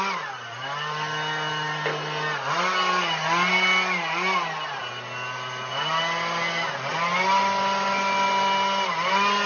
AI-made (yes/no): no